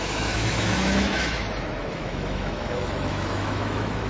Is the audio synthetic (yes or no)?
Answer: yes